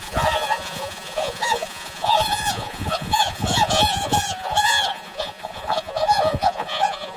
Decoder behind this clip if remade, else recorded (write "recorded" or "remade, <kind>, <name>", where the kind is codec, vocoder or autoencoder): remade, vocoder, Vocos